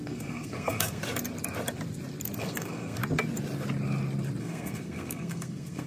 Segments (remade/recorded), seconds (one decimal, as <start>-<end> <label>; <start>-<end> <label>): 0.0-1.0 remade; 1.0-2.4 recorded; 2.4-3.0 remade; 3.0-4.4 recorded; 4.4-5.9 remade